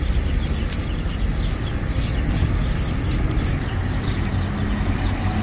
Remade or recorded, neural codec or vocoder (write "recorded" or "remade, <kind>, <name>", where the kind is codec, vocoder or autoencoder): recorded